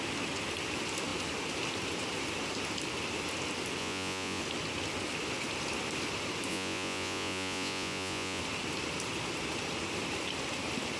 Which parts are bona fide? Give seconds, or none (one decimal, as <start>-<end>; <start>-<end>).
0.0-3.8; 4.4-6.5; 8.4-11.0